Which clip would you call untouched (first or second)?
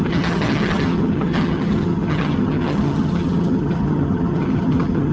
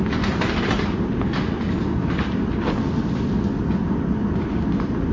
second